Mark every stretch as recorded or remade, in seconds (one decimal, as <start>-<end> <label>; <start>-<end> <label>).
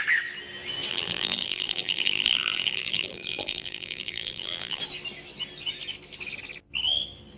0.0-0.9 recorded; 0.9-4.8 remade; 4.8-7.4 recorded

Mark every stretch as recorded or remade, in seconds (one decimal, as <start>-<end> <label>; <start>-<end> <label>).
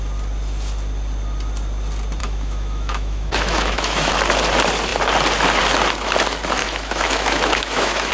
0.0-2.2 recorded; 2.2-4.1 remade; 4.1-6.6 recorded; 6.6-8.1 remade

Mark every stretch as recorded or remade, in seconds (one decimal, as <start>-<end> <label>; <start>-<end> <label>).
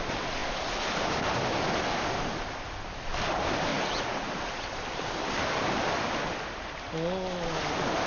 0.0-3.7 recorded; 3.7-4.3 remade; 4.3-8.1 recorded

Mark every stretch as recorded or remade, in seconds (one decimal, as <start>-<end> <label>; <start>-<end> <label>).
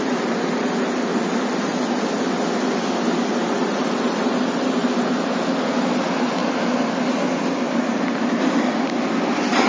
0.0-9.7 recorded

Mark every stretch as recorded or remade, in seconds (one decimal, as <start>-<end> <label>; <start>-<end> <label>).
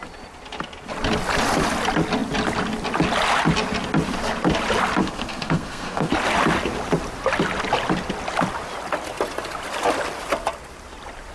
0.0-5.0 recorded; 5.0-6.1 remade; 6.1-11.3 recorded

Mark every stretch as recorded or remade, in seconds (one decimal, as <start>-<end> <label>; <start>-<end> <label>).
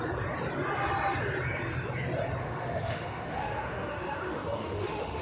0.0-2.4 recorded; 2.4-5.2 remade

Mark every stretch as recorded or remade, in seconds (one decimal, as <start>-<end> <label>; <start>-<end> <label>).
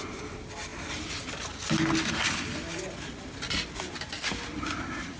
0.0-5.2 recorded